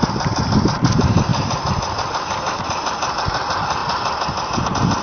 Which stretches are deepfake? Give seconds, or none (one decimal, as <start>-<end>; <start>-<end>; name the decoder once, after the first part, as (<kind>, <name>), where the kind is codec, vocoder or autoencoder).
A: none